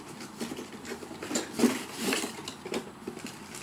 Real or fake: real